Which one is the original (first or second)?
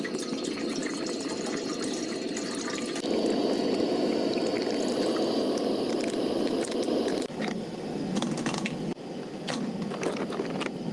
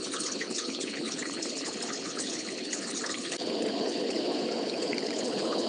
first